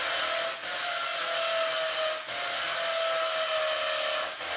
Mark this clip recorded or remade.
recorded